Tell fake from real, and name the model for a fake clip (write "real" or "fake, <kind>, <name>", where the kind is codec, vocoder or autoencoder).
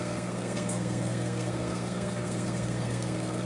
fake, codec, SNAC